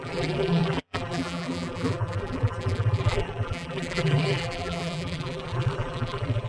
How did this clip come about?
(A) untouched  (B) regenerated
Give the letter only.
B